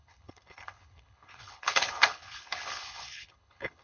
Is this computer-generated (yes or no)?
yes